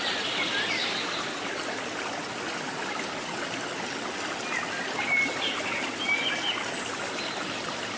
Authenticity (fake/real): real